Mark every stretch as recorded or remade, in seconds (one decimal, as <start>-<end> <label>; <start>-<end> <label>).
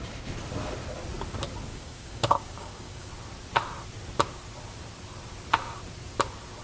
0.0-1.7 recorded; 1.7-3.1 remade; 3.1-6.6 recorded